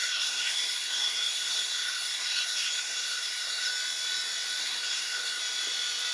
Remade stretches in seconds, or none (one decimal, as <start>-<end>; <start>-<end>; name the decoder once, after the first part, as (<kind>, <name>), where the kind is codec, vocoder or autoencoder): 0.0-3.7 (codec, SNAC); 4.6-5.4